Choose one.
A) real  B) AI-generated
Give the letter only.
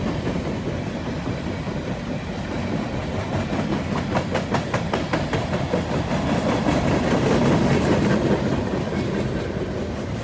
A